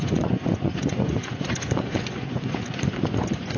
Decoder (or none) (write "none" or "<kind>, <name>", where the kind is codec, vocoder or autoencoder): vocoder, Vocos